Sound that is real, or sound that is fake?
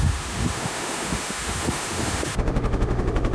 fake